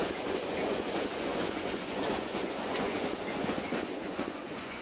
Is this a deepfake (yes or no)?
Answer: yes